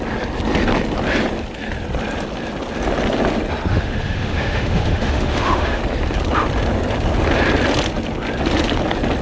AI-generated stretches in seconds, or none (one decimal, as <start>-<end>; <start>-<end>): 3.7-5.8